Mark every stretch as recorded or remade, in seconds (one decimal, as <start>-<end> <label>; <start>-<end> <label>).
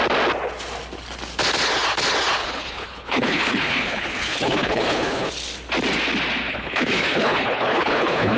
0.0-2.4 recorded; 2.4-5.3 remade; 5.3-6.5 recorded; 6.5-8.4 remade